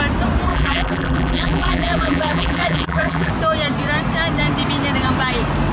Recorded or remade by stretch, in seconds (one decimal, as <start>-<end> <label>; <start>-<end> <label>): 0.0-0.5 recorded; 0.5-3.3 remade; 3.3-5.7 recorded